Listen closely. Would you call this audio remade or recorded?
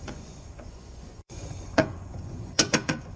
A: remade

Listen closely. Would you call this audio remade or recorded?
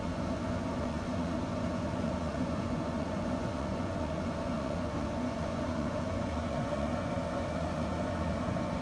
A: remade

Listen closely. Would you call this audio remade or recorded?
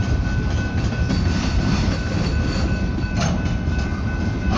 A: recorded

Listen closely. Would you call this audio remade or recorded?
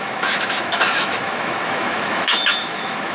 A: remade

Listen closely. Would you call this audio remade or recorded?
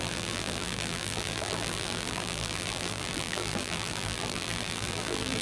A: remade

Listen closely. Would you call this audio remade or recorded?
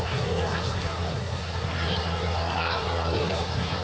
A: remade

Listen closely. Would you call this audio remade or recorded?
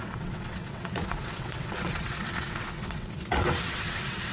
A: remade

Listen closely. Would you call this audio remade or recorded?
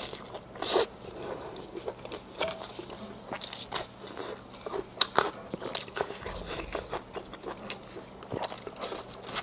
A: recorded